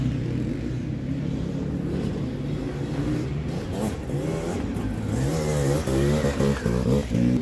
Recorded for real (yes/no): yes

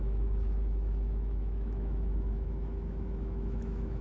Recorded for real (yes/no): no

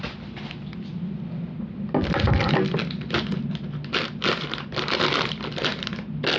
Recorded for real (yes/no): yes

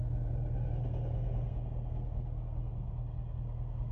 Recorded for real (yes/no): no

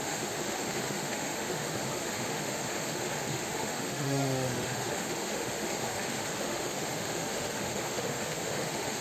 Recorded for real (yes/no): no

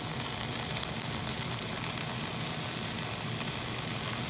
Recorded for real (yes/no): yes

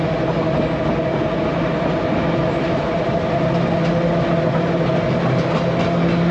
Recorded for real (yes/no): yes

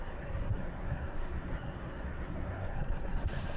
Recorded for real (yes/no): no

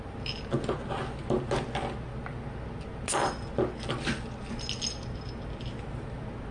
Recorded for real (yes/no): yes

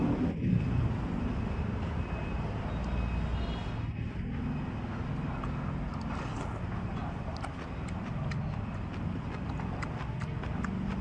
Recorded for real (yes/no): yes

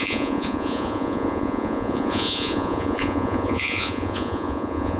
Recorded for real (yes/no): no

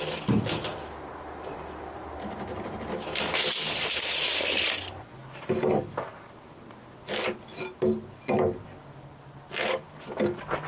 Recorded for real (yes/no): yes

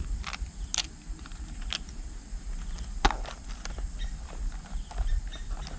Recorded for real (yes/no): yes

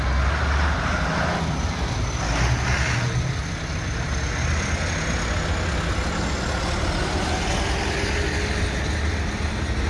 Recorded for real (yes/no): yes